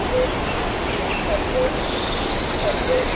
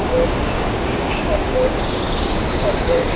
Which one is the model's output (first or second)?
second